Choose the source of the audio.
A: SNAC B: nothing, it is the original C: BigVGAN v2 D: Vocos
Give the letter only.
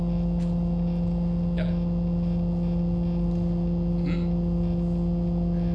B